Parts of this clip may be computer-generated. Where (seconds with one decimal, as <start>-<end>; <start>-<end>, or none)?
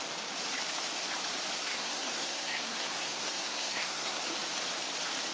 1.6-4.2